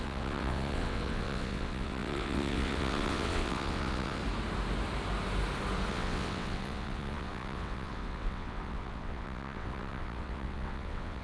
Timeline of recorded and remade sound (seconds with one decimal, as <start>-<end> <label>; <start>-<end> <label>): 0.0-4.2 remade; 4.2-5.9 recorded; 5.9-11.2 remade